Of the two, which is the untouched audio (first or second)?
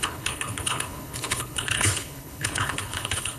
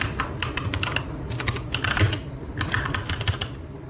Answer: second